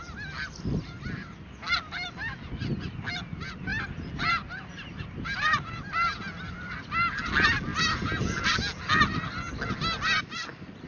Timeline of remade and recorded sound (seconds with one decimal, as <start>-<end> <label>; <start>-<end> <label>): 0.0-10.9 recorded